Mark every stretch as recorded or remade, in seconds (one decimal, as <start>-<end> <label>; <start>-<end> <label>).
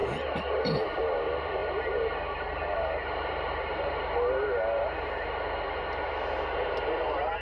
0.0-1.0 remade; 1.0-1.6 recorded; 1.6-6.0 remade; 6.0-7.4 recorded